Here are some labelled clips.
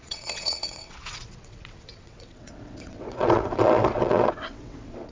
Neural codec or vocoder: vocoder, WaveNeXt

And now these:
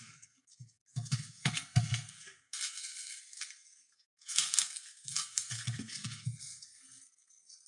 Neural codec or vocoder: codec, SNAC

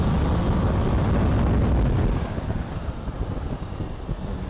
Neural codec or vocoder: none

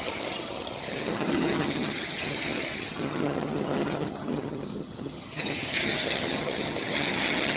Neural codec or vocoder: vocoder, HiFi-GAN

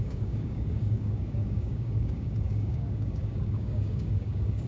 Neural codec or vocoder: codec, DAC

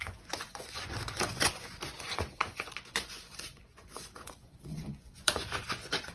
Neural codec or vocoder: vocoder, Vocos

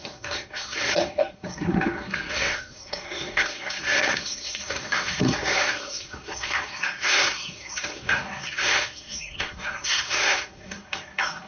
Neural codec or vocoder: codec, SNAC